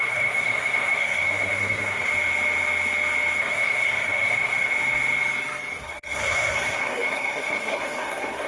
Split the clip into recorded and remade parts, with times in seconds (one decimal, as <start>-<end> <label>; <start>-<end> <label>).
0.0-2.1 remade; 2.1-3.4 recorded; 3.4-4.7 remade; 4.7-5.8 recorded; 5.8-8.5 remade